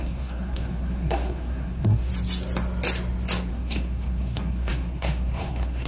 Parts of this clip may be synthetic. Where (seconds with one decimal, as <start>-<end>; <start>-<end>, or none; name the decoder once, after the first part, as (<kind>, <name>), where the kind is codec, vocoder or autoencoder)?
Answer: 0.0-2.1 (codec, SNAC); 3.5-5.9